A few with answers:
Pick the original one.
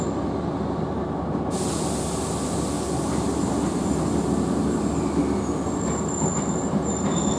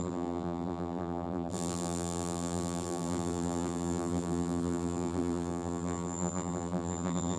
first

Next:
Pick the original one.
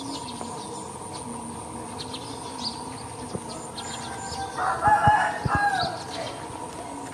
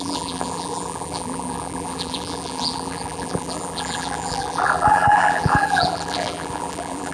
first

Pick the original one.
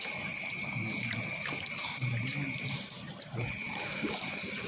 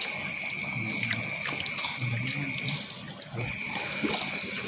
second